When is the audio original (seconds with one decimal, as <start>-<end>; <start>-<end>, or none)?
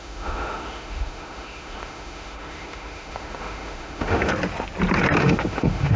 4.3-5.2